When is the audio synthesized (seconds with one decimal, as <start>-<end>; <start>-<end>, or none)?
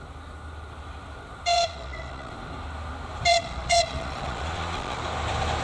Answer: 1.5-2.3; 3.3-5.0